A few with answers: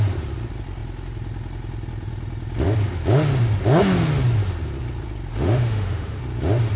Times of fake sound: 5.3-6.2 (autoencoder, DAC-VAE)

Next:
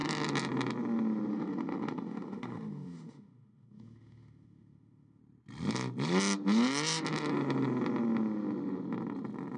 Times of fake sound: 1.3-5.2 (autoencoder, DAC-VAE)

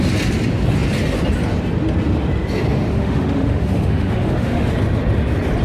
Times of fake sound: 2.9-4.7 (autoencoder, DAC-VAE)

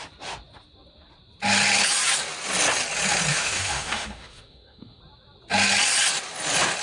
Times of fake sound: 3.3-5.0 (autoencoder, DAC-VAE)

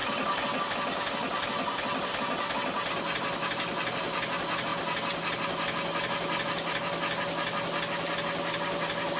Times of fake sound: none

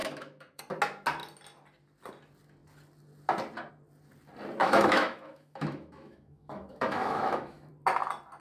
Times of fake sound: 0.0-0.6 (autoencoder, DAC-VAE); 4.6-7.7